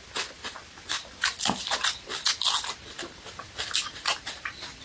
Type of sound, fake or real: real